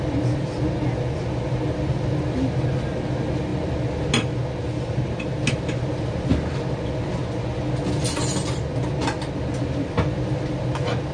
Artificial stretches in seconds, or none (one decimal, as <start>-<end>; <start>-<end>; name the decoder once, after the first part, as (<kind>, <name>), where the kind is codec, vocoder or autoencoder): none